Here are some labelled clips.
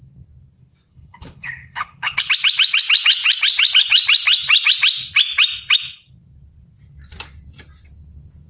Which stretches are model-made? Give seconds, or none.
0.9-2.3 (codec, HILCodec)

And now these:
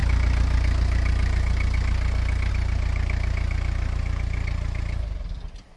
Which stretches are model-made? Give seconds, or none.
none

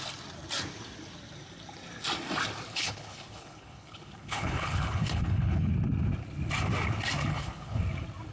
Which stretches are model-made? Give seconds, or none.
2.7-5.7 (codec, HILCodec); 7.3-7.8